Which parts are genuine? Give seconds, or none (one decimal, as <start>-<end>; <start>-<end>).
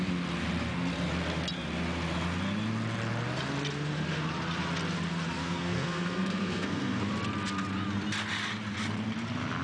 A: 0.0-5.4; 7.0-9.6